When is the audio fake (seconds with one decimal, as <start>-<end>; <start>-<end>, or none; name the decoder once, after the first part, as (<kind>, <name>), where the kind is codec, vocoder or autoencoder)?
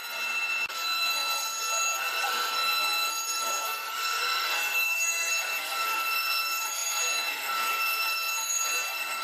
0.7-9.2 (codec, SNAC)